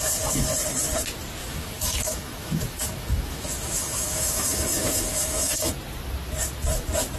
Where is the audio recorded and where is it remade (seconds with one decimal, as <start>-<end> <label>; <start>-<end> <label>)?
0.0-1.4 recorded; 1.4-5.7 remade; 5.7-7.2 recorded